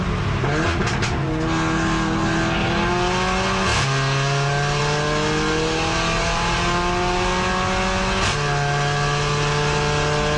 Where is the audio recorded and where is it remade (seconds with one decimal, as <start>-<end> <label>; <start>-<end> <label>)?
0.0-10.4 recorded